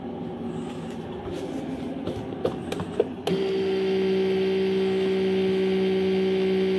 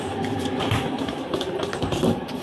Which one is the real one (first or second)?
first